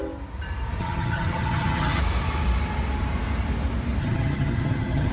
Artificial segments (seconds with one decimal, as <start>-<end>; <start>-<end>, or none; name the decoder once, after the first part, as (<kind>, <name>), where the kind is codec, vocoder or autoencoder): 0.8-2.0 (vocoder, HiFi-GAN); 4.0-5.1